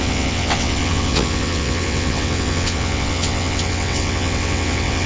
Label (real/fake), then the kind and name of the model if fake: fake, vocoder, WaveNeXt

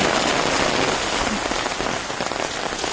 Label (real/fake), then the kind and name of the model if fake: real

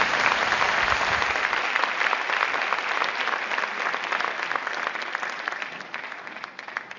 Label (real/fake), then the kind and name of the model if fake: real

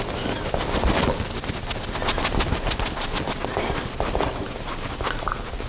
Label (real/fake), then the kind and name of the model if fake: real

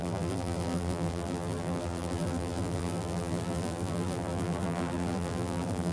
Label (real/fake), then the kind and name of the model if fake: fake, vocoder, BigVGAN v2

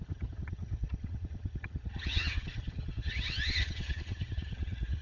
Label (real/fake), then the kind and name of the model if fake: fake, vocoder, HiFi-GAN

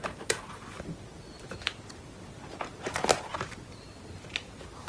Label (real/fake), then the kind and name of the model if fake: real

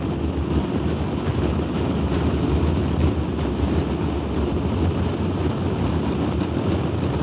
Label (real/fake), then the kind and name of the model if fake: real